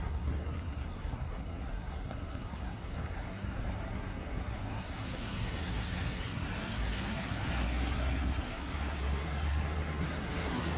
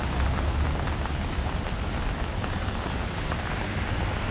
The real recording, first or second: second